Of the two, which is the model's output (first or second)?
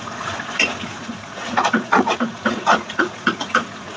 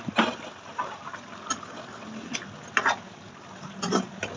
first